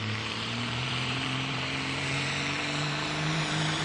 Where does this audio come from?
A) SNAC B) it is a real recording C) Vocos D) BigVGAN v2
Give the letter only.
D